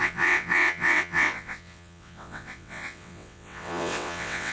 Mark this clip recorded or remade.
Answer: remade